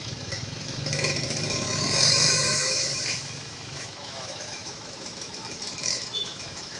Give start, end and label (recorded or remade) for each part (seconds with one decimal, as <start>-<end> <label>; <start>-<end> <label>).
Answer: 0.0-6.8 remade